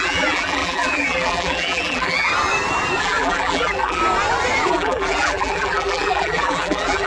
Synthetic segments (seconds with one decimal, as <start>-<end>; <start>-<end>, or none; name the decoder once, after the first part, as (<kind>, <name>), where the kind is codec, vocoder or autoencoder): 0.0-2.3 (vocoder, BigVGAN v2); 3.0-4.0; 4.7-7.1